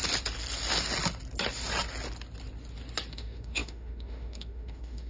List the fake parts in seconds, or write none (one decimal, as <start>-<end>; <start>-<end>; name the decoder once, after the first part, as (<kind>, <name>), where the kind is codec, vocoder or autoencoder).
3.1-5.1 (autoencoder, DAC-VAE)